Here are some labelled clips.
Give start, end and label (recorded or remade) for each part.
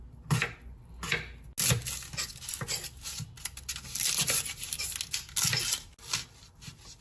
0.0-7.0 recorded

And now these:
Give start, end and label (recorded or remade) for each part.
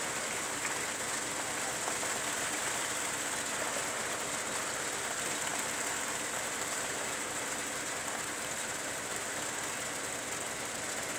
0.0-5.5 recorded; 5.5-8.1 remade; 8.1-11.2 recorded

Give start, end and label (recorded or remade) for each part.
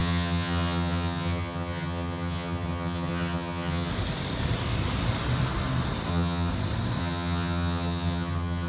0.0-3.9 remade; 3.9-6.1 recorded; 6.1-6.5 remade; 6.5-7.0 recorded; 7.0-8.7 remade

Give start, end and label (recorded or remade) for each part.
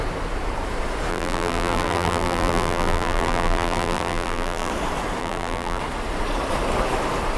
0.0-1.1 recorded; 1.1-4.7 remade; 4.7-5.2 recorded; 5.2-5.8 remade; 5.8-7.4 recorded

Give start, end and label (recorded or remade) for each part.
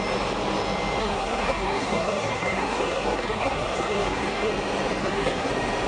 0.0-1.0 recorded; 1.0-4.5 remade; 4.5-5.0 recorded; 5.0-5.5 remade; 5.5-5.9 recorded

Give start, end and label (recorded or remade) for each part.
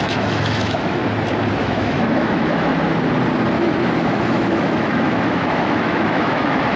0.0-1.0 remade; 1.0-1.6 recorded; 1.6-2.7 remade; 2.7-4.0 recorded; 4.0-6.8 remade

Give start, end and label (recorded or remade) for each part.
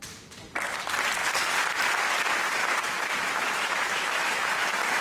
0.0-2.6 recorded; 2.6-5.0 remade